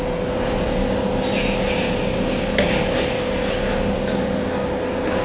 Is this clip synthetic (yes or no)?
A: no